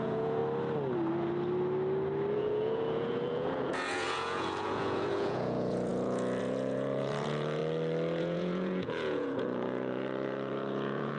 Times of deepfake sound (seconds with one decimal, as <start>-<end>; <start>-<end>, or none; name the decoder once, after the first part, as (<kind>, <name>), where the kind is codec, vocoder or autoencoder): 0.0-0.4 (vocoder, Vocos); 2.3-7.6; 8.2-11.2